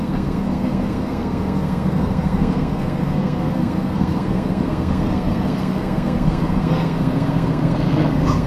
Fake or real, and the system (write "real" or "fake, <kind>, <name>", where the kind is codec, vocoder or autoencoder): fake, codec, SNAC